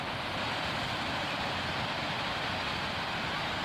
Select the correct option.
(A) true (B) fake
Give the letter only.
A